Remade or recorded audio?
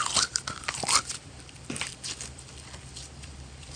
remade